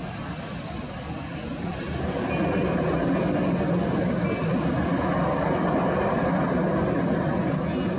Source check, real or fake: real